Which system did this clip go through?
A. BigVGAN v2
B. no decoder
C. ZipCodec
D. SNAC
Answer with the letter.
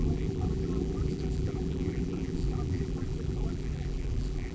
A